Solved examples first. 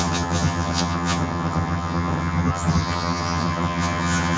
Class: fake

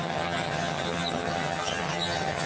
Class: fake